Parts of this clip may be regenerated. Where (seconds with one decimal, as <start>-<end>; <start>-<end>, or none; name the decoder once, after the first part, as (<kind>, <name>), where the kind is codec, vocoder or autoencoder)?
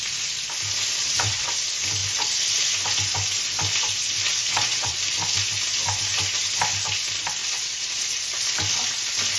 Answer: 1.0-1.5 (vocoder, WaveNeXt); 4.4-5.0; 7.4-8.0